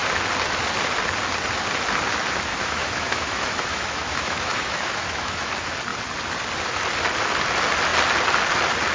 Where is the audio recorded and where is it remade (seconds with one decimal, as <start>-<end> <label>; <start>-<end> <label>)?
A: 0.0-2.5 recorded; 2.5-5.5 remade; 5.5-8.9 recorded